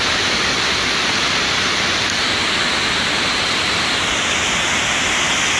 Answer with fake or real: real